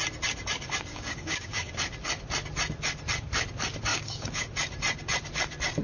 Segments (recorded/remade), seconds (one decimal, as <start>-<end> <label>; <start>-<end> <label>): 0.0-0.9 recorded; 0.9-1.7 remade; 1.7-3.9 recorded; 3.9-4.5 remade; 4.5-5.8 recorded